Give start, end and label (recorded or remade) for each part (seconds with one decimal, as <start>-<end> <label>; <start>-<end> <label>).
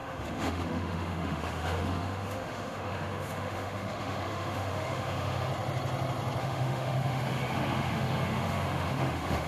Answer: 0.0-5.5 remade; 5.5-6.4 recorded; 6.4-9.5 remade